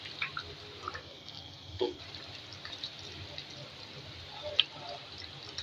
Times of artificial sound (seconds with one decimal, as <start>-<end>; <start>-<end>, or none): 1.0-2.0

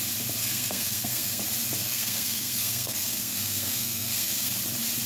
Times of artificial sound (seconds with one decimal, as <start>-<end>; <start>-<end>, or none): 0.4-1.4; 1.8-4.5

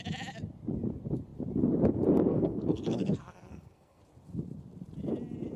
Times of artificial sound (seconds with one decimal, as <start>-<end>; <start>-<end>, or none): 2.3-4.0

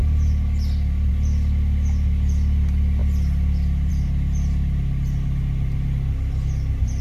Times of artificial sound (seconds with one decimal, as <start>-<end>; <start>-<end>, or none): none

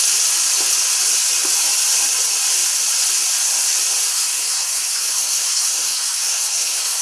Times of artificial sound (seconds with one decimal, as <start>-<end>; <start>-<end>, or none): 4.1-7.0

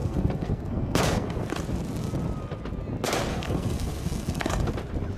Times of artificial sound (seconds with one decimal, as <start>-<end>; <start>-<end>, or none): 0.0-1.5; 3.3-4.7

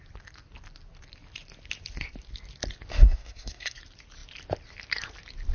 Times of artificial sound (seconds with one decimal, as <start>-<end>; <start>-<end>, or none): 2.9-3.8

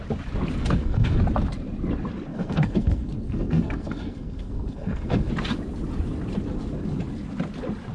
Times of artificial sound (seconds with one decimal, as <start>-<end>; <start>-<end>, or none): 0.6-1.2; 2.3-5.3